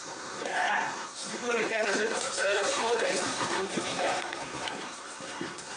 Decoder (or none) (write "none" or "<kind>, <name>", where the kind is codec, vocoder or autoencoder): codec, SNAC